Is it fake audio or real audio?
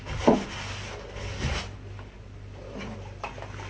real